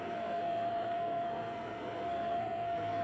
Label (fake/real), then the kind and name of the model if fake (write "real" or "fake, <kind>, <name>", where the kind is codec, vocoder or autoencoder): fake, codec, SNAC